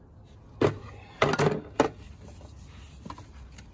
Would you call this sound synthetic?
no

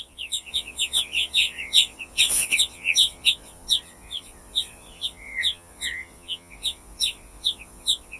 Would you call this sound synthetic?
yes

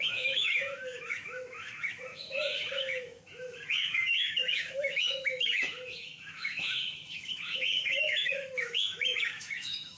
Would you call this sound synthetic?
yes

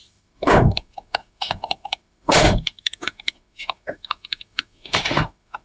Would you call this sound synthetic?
yes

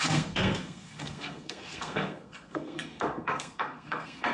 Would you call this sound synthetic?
yes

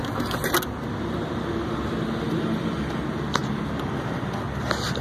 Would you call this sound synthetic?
no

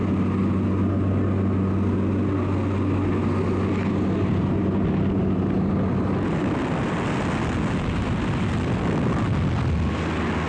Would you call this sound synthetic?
no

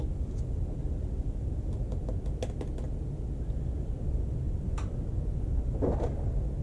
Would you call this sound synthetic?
no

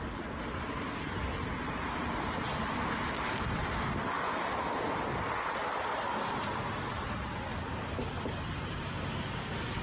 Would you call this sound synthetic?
no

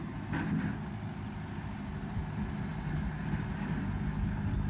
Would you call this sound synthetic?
no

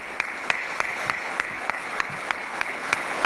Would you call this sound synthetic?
yes